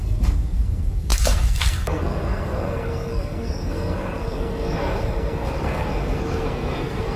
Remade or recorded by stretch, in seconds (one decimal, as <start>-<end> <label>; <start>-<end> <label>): 0.0-7.2 remade